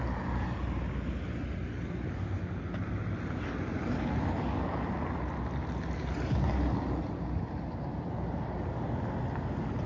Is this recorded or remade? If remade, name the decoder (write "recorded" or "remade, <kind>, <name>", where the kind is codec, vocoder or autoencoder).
recorded